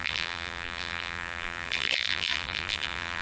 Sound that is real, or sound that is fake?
fake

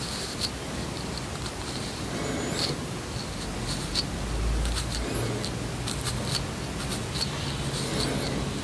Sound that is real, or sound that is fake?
real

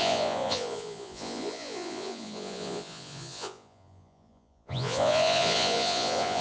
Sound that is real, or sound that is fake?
fake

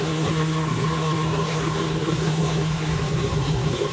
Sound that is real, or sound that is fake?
fake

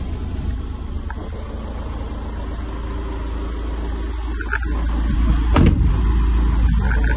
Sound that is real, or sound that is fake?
real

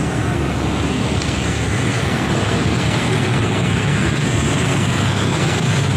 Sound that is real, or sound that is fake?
fake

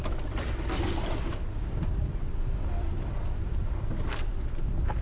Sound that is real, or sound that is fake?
fake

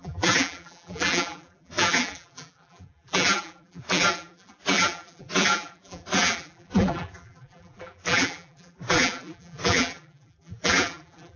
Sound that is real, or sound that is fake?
fake